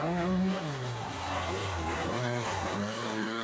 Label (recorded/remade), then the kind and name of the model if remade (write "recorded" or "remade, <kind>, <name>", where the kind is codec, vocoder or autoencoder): remade, codec, SNAC